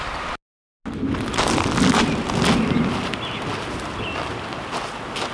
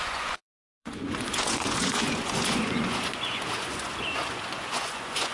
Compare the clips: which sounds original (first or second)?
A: first